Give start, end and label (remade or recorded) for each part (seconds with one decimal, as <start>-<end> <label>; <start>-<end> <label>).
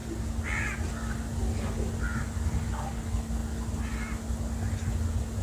0.0-5.4 recorded